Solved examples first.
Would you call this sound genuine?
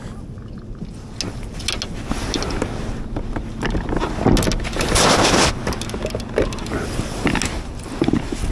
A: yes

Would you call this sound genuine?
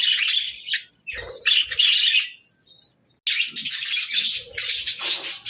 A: yes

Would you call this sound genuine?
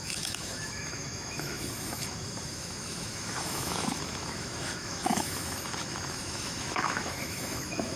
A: no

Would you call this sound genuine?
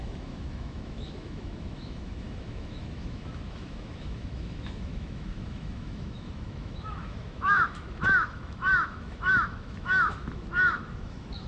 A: no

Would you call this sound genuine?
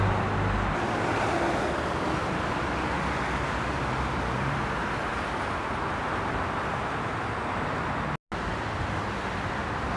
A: yes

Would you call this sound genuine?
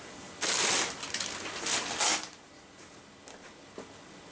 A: yes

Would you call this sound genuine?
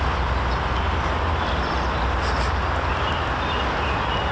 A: yes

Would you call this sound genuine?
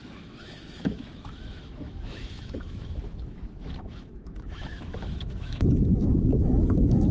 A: no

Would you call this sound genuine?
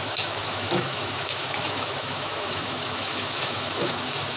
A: no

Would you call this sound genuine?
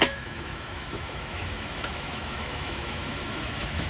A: no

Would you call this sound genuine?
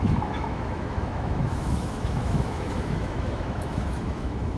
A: no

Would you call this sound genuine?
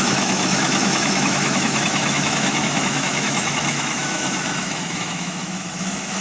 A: no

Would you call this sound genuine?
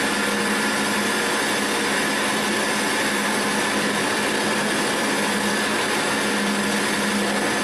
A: yes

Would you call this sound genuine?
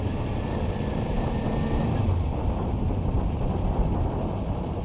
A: yes